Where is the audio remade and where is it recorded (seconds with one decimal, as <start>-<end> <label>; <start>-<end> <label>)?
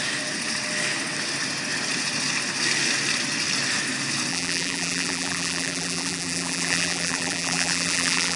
0.0-4.3 recorded; 4.3-8.4 remade